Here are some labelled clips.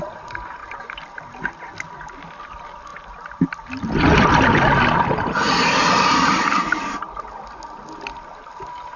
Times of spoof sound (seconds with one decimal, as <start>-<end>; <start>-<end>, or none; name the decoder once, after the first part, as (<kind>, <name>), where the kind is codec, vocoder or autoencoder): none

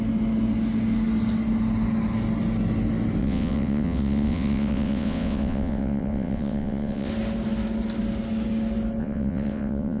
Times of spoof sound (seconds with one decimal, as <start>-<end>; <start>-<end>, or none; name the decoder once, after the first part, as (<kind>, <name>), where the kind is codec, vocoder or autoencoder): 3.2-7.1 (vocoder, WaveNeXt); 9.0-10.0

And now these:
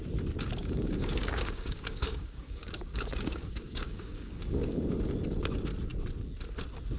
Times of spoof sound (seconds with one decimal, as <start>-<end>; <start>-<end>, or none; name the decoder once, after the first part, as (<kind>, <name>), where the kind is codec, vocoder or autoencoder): 0.6-4.8 (codec, DAC)

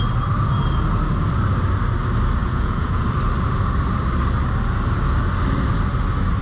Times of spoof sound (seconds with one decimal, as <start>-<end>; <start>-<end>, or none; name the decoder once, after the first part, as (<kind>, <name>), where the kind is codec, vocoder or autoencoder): 2.4-3.0 (vocoder, Vocos)